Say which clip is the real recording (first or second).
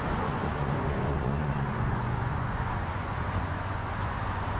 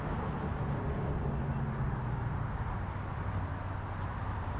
second